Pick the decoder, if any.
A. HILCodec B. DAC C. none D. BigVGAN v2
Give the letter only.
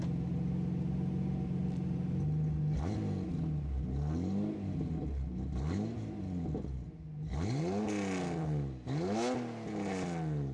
C